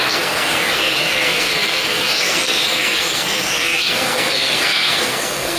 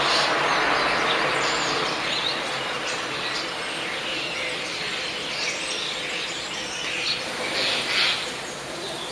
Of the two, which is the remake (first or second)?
first